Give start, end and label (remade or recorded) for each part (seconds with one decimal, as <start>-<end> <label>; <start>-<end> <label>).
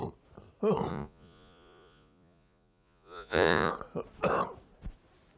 0.0-0.9 recorded; 0.9-3.7 remade; 3.7-5.4 recorded